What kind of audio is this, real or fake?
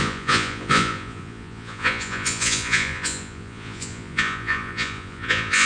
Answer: fake